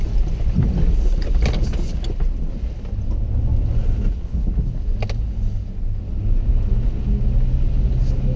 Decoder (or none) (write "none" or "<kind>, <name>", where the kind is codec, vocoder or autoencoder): none